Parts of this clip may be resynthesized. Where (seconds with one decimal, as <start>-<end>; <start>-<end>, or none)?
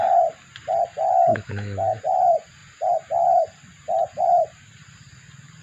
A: 1.3-2.0